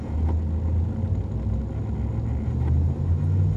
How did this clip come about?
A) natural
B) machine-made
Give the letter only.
A